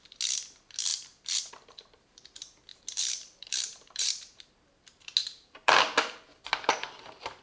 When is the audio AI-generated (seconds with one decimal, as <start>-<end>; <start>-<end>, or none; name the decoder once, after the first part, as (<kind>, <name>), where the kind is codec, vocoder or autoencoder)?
0.9-1.5 (vocoder, BigVGAN v2); 2.7-4.5; 5.2-7.4